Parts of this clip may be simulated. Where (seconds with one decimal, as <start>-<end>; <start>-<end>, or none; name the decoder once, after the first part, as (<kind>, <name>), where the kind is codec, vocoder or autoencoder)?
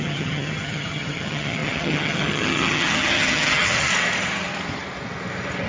0.0-3.9 (vocoder, HiFi-GAN)